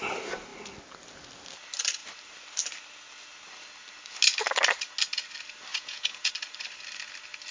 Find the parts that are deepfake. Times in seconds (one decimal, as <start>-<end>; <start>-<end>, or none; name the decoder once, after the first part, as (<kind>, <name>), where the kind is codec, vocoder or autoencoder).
5.7-6.3 (vocoder, Vocos)